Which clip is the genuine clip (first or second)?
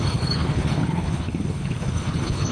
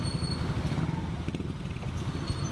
second